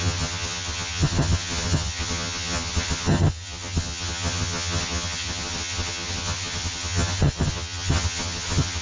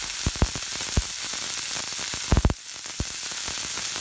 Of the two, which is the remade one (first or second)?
first